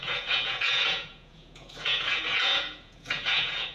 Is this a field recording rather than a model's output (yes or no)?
no